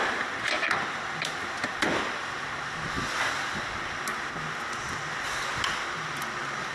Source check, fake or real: real